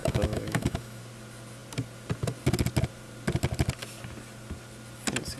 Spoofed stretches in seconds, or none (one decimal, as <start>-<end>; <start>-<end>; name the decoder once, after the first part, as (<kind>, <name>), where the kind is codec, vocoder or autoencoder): 0.0-1.0 (autoencoder, DAC-VAE)